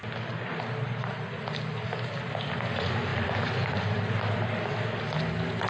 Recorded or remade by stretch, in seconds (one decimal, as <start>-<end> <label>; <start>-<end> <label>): 0.0-3.1 recorded; 3.1-4.6 remade; 4.6-5.7 recorded